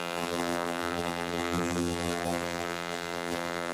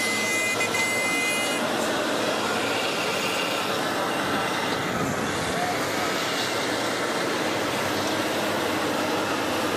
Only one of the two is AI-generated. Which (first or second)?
first